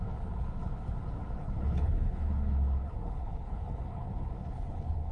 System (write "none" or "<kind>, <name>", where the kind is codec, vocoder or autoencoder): codec, HILCodec